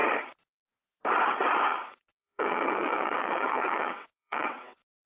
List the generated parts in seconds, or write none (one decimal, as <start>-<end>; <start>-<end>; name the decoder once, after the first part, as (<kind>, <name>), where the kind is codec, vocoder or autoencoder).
1.7-5.1 (vocoder, WaveNeXt)

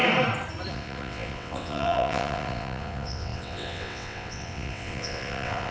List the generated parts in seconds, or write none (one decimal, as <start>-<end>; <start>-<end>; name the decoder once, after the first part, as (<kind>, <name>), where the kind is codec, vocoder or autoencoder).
0.7-5.7 (vocoder, WaveNeXt)